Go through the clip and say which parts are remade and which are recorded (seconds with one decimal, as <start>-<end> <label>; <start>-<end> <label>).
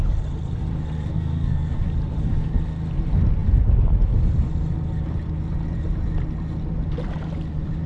0.0-1.1 recorded; 1.1-1.8 remade; 1.8-7.9 recorded